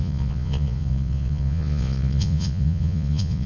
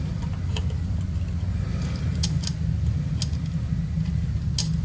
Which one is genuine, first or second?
second